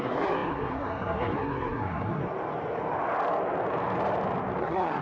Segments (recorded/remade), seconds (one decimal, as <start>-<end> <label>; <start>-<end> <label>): 0.0-2.2 remade; 2.2-4.6 recorded; 4.6-5.0 remade